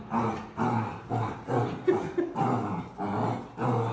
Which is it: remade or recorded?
recorded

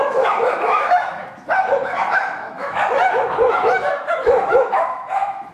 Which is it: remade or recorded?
remade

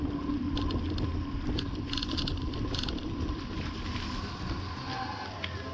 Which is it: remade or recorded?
recorded